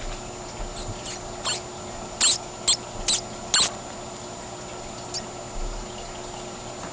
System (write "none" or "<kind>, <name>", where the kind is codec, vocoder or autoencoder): none